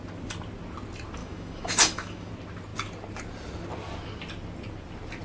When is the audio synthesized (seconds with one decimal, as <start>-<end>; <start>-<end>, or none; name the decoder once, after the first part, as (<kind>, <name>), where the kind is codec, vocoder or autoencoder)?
1.2-2.3 (autoencoder, DAC-VAE)